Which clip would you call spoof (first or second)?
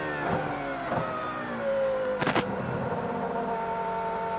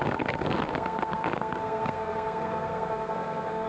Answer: second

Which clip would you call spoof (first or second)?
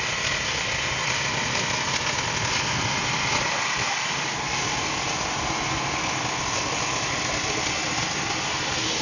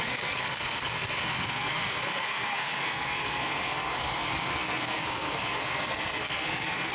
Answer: second